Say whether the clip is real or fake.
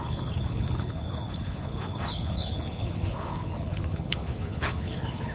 fake